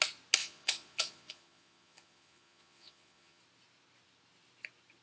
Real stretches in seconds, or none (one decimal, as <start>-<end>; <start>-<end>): 0.0-0.4; 3.4-5.0